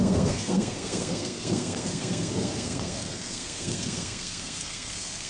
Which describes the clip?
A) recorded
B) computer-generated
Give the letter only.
B